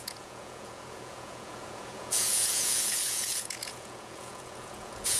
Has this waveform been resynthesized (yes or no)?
yes